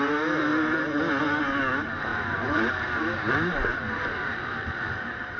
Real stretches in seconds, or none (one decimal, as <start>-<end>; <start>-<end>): 0.0-2.1